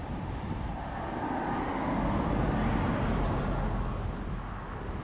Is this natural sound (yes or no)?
yes